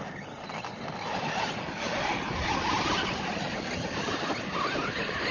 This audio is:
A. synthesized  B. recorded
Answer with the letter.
B